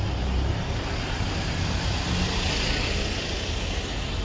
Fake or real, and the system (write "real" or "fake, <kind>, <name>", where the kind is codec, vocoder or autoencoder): real